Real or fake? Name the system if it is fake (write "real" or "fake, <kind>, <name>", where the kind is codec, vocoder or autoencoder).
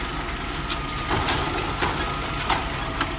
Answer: fake, vocoder, BigVGAN v2